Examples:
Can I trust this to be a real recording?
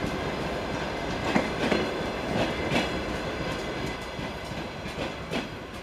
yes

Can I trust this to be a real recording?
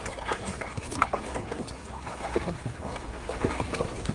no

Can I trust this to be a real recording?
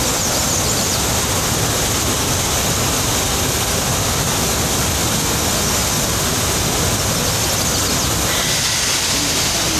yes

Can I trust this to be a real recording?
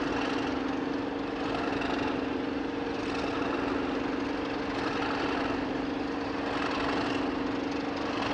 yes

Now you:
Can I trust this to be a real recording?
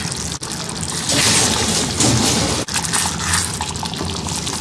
yes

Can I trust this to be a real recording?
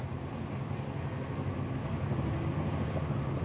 yes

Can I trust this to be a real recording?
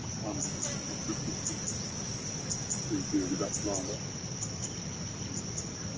yes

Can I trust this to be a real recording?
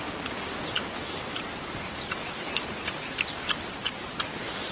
no